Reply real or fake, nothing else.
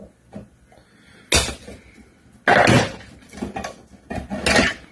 real